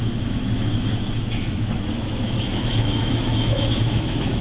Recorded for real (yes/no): no